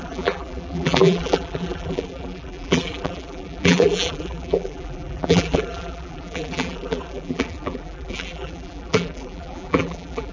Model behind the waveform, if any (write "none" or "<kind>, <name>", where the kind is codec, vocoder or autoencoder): vocoder, BigVGAN v2